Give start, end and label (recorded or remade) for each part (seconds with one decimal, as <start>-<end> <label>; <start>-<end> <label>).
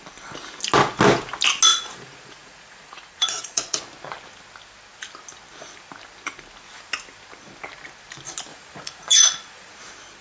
0.0-1.7 recorded; 1.7-3.8 remade; 3.8-8.5 recorded; 8.5-9.7 remade; 9.7-10.2 recorded